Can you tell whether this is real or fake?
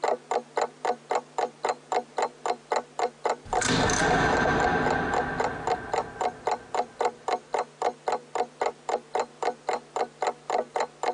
real